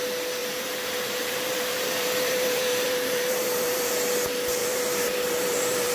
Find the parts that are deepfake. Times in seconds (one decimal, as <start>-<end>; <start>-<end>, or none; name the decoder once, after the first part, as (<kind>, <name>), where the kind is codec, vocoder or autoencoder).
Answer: 0.4-3.9 (vocoder, BigVGAN v2); 4.6-5.9